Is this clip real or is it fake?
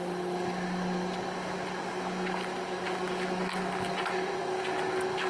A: real